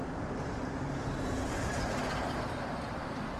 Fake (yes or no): no